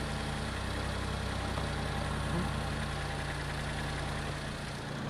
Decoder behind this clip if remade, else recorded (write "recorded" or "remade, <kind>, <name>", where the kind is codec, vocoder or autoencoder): recorded